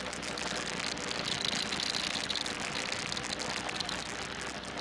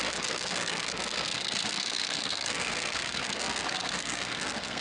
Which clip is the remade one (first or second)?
second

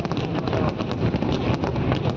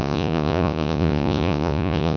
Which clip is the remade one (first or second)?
second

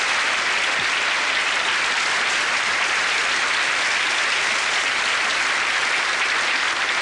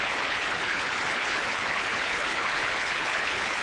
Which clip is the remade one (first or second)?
second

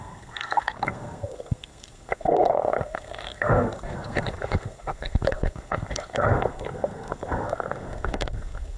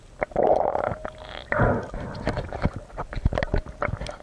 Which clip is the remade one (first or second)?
first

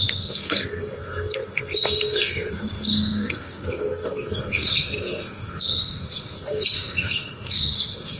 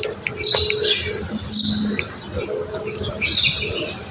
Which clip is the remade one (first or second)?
first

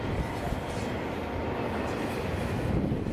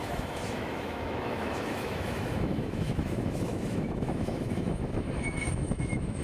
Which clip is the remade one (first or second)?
second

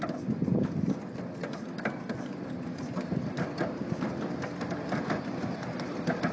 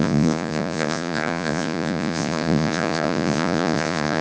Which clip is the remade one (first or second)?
second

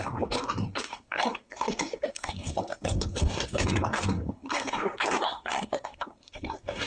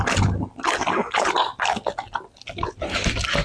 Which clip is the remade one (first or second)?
first